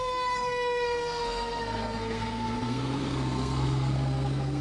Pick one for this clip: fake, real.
fake